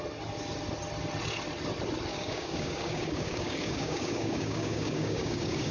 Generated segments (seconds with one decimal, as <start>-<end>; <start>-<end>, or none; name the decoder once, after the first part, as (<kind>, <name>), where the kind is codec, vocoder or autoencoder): 2.1-5.7 (codec, DAC)